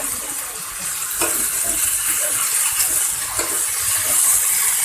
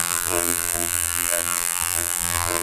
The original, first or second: first